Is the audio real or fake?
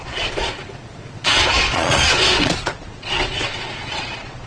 fake